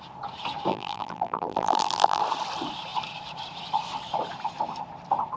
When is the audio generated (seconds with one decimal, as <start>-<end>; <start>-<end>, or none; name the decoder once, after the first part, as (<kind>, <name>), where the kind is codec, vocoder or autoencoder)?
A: 0.7-2.2 (vocoder, BigVGAN v2)